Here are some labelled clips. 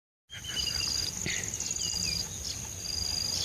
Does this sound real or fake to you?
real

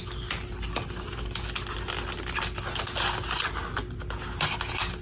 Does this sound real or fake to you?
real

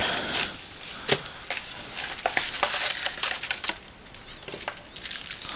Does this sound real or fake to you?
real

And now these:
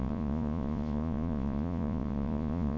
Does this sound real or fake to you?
fake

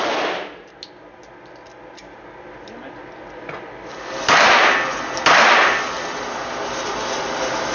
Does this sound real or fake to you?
real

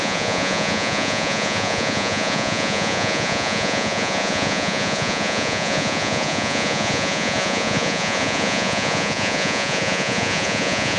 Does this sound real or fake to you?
fake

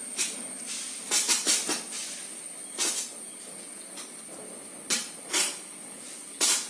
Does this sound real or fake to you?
real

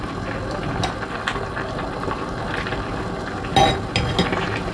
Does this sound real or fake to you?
real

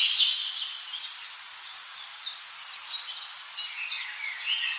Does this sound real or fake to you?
real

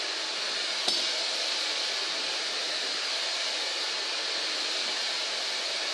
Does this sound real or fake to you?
real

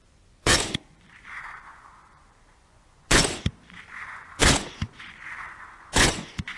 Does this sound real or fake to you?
fake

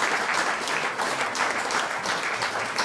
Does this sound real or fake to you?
real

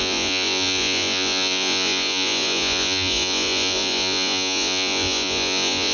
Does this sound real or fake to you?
fake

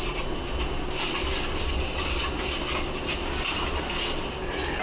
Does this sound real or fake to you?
real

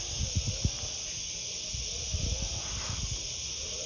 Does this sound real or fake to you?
real